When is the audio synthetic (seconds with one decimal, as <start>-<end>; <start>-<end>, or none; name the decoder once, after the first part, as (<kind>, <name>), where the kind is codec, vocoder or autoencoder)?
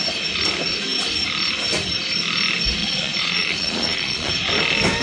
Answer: 2.8-4.3 (vocoder, Vocos)